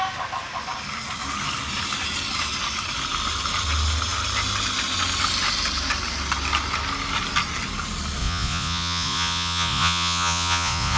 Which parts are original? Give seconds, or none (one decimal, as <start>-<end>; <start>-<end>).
0.0-8.2